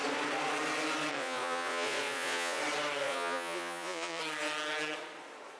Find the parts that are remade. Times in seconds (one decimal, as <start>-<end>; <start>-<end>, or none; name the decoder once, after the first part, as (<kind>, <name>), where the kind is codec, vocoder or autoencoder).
1.1-2.6 (vocoder, Vocos); 3.0-4.2

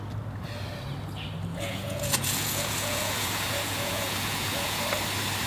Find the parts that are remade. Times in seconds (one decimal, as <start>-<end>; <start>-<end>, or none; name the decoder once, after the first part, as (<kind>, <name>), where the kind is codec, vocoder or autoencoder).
1.5-4.8 (vocoder, Vocos)

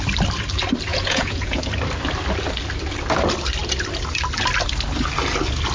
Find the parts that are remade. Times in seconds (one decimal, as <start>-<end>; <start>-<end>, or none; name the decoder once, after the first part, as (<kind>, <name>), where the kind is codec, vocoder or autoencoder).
0.9-1.6 (vocoder, Vocos)

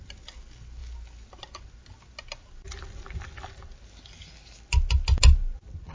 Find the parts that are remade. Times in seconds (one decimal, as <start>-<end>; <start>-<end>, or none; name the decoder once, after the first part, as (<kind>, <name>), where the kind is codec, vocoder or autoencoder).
none

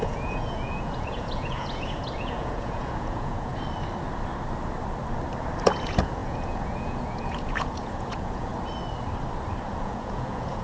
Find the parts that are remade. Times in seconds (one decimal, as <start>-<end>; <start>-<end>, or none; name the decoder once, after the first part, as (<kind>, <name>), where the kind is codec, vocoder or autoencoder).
0.0-3.5 (vocoder, Vocos); 5.6-8.5; 9.7-10.6

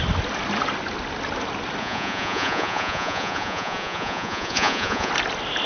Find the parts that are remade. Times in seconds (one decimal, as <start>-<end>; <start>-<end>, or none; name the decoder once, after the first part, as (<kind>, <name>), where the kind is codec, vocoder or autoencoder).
1.8-5.1 (vocoder, Vocos)

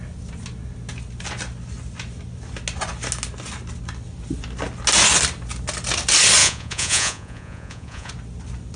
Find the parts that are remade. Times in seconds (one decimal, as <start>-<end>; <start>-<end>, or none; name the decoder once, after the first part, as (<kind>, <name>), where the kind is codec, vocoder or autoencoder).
6.4-8.1 (vocoder, Vocos)